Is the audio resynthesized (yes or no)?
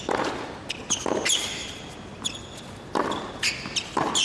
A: no